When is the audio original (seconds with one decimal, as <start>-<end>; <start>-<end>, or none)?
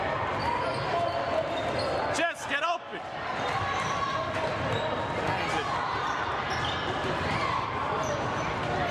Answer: 0.0-7.8; 8.5-8.9